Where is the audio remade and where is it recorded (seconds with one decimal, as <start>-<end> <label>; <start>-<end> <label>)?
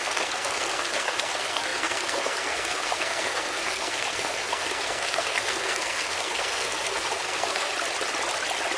0.0-7.7 remade; 7.7-8.8 recorded